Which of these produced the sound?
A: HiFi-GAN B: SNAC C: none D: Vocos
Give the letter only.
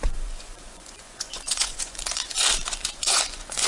D